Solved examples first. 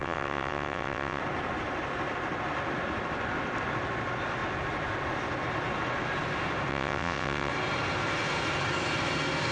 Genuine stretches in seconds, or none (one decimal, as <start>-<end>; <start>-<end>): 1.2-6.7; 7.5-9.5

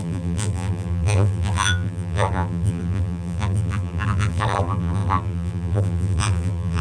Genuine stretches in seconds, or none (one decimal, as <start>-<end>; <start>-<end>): none

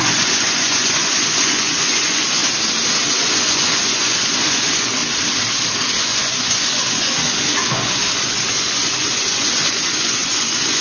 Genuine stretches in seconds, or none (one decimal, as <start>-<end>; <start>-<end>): 2.4-3.1; 5.0-6.0

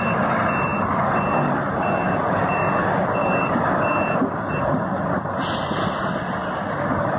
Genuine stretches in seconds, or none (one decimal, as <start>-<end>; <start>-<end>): 0.0-7.2

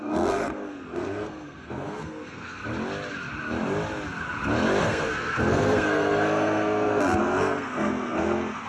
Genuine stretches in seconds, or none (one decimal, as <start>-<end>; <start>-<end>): 2.6-4.8

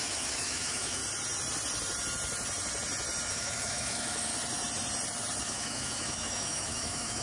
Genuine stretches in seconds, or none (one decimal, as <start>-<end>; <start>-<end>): 1.0-3.3; 4.3-5.4